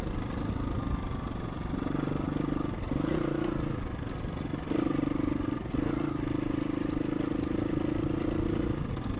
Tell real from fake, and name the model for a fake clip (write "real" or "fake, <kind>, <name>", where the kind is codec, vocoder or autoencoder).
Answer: real